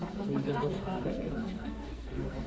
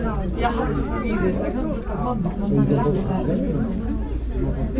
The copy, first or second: first